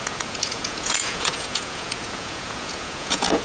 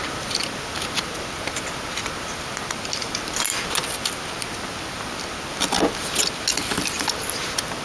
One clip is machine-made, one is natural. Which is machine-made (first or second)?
first